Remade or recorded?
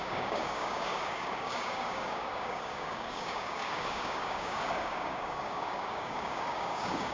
remade